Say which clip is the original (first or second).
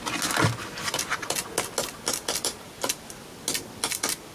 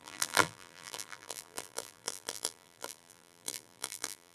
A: first